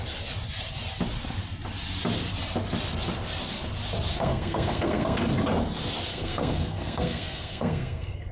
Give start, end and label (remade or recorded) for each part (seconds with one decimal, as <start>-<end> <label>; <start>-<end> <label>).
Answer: 0.0-4.1 recorded; 4.1-5.2 remade; 5.2-6.1 recorded; 6.1-8.3 remade